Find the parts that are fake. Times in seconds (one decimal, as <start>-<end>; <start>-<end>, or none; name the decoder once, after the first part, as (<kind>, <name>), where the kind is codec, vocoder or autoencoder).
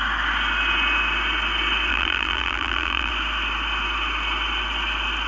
1.9-3.1 (vocoder, BigVGAN v2)